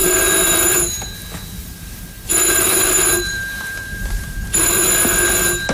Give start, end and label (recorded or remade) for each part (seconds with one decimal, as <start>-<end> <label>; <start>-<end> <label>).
0.0-1.1 remade; 1.1-1.6 recorded; 1.6-4.7 remade; 4.7-5.7 recorded